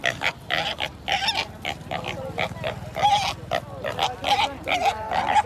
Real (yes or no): yes